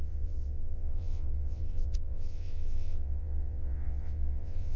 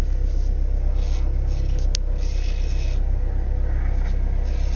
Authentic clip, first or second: second